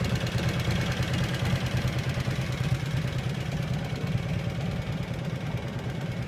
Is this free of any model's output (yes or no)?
yes